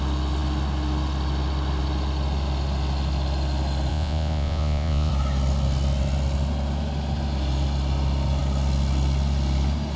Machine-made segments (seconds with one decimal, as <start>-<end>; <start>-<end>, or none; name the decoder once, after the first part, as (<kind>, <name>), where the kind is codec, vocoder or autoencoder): 3.9-5.1 (vocoder, Vocos)

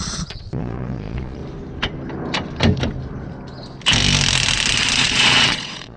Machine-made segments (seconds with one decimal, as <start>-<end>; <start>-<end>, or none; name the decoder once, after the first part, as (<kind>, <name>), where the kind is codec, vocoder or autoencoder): 0.0-1.4 (vocoder, Vocos); 5.0-6.0